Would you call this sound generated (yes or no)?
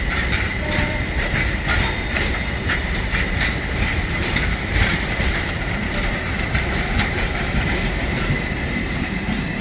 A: yes